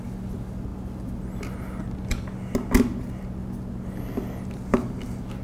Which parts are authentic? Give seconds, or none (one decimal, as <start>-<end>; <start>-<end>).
0.0-5.4